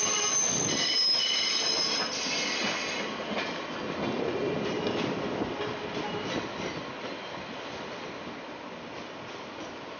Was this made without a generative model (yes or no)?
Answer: yes